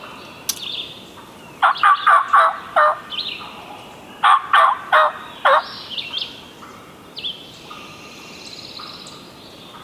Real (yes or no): yes